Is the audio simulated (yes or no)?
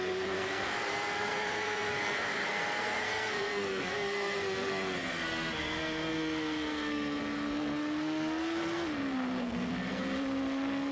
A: yes